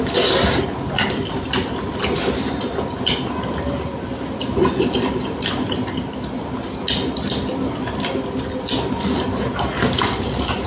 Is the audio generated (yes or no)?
no